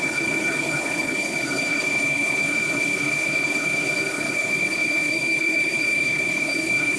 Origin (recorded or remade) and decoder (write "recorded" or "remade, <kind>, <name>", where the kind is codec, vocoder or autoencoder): remade, codec, HILCodec